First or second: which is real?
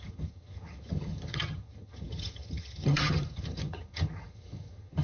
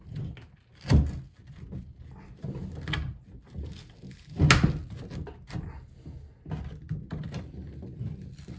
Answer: second